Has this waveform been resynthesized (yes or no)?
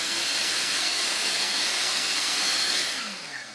yes